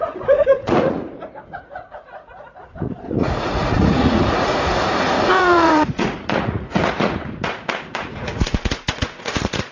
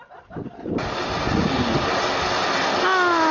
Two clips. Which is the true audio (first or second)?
second